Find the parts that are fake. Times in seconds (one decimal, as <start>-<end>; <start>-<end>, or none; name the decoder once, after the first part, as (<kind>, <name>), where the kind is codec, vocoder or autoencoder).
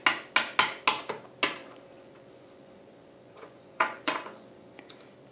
1.6-4.8 (vocoder, Vocos)